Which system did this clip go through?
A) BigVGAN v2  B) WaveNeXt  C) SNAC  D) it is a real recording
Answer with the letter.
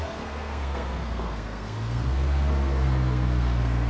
C